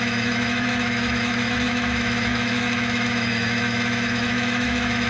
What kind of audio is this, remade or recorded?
remade